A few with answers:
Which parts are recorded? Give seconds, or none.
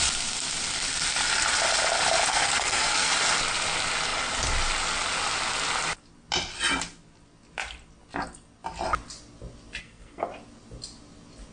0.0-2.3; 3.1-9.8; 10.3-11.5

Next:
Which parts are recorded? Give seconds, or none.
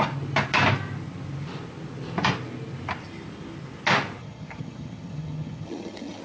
0.0-4.2